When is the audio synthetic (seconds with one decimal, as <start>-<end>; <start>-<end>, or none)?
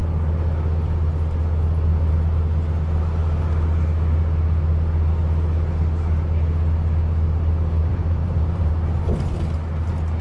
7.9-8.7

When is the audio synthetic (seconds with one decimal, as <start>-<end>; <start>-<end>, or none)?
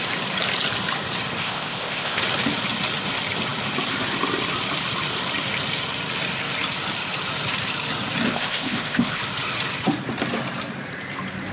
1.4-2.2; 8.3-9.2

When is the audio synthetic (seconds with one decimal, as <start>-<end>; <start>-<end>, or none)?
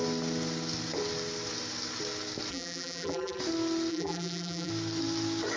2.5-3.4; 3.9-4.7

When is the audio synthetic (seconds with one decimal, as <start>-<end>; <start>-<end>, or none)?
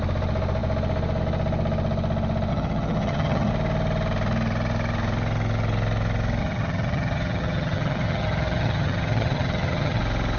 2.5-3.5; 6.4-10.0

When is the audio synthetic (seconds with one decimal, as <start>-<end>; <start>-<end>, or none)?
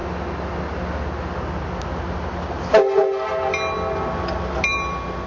none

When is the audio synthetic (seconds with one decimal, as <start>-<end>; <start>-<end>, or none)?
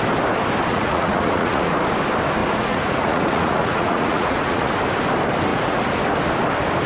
0.7-1.7; 2.4-4.7; 5.5-6.0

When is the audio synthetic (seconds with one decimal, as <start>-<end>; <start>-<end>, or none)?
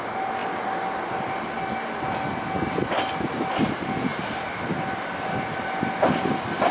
none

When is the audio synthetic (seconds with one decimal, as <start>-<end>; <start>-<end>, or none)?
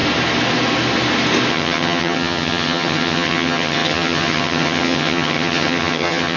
1.5-6.4